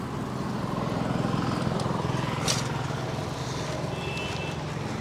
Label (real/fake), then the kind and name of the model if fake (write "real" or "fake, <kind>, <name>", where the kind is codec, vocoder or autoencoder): real